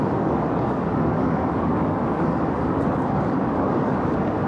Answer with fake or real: fake